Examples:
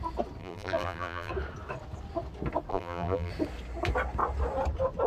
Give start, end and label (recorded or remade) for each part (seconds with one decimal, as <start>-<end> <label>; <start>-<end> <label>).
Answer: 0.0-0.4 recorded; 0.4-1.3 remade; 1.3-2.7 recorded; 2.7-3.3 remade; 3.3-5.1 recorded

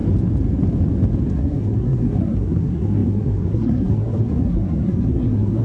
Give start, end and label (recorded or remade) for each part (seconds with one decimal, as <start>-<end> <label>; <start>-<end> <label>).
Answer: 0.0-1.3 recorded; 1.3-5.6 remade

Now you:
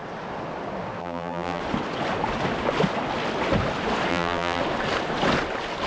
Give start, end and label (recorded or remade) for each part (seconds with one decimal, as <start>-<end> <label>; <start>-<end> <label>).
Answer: 0.0-1.0 recorded; 1.0-1.6 remade; 1.6-4.1 recorded; 4.1-4.6 remade; 4.6-5.9 recorded

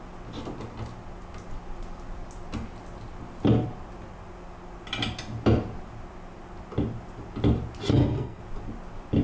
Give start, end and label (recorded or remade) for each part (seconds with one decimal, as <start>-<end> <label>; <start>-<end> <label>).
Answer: 0.0-7.9 recorded; 7.9-8.4 remade; 8.4-9.2 recorded

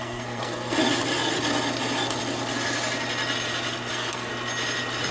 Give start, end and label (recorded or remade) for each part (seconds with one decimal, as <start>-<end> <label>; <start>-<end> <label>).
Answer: 0.0-0.8 remade; 0.8-3.9 recorded; 3.9-4.3 remade; 4.3-5.1 recorded

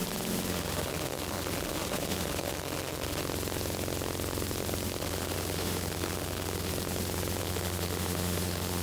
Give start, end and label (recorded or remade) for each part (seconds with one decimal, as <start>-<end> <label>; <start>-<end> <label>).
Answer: 0.0-0.5 recorded; 0.5-3.2 remade; 3.2-5.0 recorded; 5.0-6.7 remade; 6.7-7.4 recorded; 7.4-8.8 remade

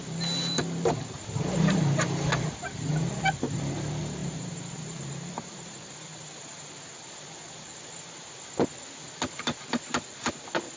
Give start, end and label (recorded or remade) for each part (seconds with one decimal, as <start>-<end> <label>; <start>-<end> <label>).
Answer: 0.0-4.2 recorded; 4.2-6.7 remade; 6.7-10.8 recorded

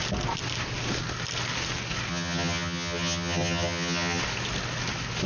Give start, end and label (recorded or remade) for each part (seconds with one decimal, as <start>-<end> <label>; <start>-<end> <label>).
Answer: 0.0-2.1 recorded; 2.1-4.2 remade; 4.2-5.3 recorded